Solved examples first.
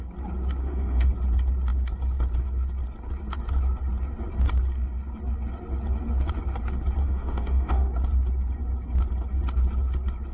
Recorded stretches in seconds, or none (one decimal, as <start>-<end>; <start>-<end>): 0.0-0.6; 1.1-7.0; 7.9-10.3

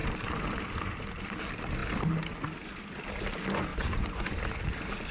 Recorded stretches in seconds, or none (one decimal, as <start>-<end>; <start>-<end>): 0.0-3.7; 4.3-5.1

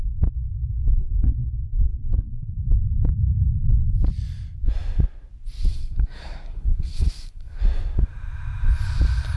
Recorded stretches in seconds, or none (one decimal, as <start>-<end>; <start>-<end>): 0.0-1.0; 2.5-5.7; 7.6-9.4

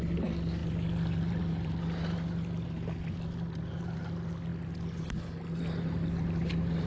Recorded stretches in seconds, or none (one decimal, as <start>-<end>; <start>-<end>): 0.0-6.9

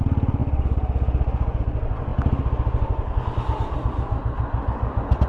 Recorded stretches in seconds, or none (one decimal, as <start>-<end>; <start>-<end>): 0.0-5.3

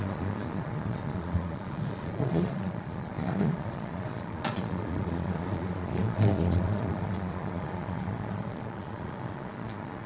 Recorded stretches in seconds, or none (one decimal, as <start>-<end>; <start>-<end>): none

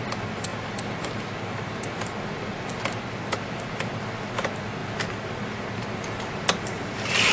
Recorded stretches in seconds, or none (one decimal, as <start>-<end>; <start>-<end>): 0.0-7.3

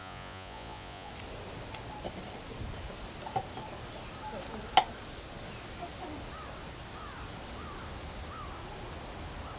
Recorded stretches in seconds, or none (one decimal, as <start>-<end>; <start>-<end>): 1.1-9.6